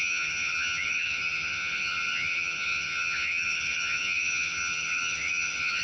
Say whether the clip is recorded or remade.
remade